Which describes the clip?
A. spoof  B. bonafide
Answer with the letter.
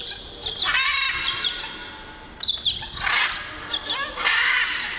B